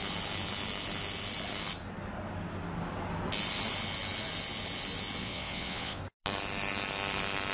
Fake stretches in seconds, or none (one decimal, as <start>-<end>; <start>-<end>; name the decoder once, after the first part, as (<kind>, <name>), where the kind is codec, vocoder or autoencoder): 5.2-6.0 (vocoder, WaveNeXt)